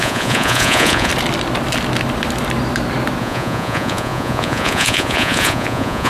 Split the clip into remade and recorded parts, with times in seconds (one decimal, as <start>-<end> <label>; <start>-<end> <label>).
0.0-1.1 remade; 1.1-3.2 recorded; 3.2-6.1 remade